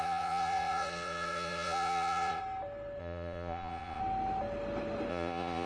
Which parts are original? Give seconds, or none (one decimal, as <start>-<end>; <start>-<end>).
2.4-3.0; 4.0-5.1